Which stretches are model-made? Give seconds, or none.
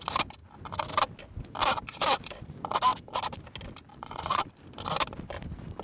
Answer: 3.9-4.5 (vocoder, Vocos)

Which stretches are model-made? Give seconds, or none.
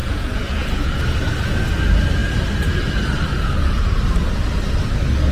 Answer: 0.0-1.0 (vocoder, Vocos); 3.3-4.0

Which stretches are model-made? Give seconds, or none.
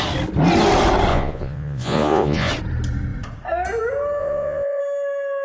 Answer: 1.1-2.5 (vocoder, Vocos); 4.2-4.8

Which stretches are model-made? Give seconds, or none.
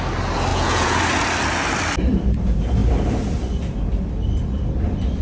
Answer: 0.5-1.0 (vocoder, Vocos)